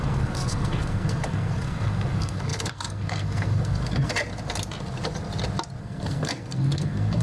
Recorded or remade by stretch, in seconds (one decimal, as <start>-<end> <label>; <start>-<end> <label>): 0.0-4.1 remade; 4.1-5.8 recorded; 5.8-7.2 remade